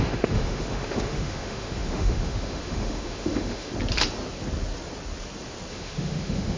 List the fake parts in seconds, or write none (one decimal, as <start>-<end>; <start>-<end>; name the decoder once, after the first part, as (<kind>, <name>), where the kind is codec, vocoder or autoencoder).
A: 0.0-3.7 (autoencoder, DAC-VAE); 5.7-6.6